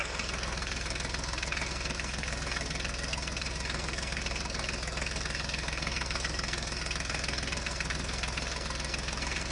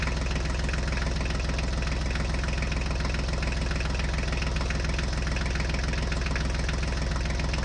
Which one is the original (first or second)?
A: second